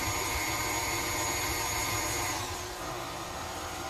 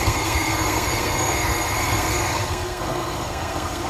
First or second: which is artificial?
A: second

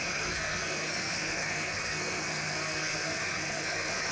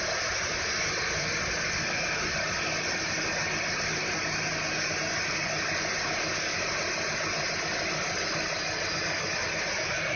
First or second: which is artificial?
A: first